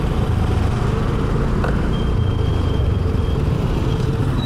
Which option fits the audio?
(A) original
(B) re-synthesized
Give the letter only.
B